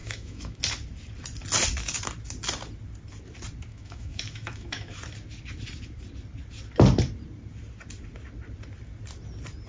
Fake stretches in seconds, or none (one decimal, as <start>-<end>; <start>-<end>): 0.0-0.6; 3.7-5.0